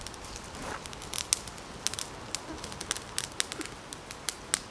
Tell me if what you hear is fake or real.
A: real